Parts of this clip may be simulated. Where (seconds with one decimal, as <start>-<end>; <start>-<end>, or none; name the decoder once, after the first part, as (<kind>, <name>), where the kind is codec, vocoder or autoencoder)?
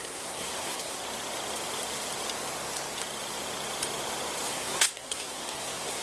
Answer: 0.0-1.0 (codec, SNAC); 4.5-6.0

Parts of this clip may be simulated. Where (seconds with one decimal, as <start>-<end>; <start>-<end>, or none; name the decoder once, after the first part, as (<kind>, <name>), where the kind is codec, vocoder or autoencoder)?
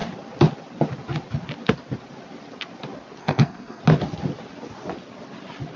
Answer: 3.2-3.8 (codec, SNAC)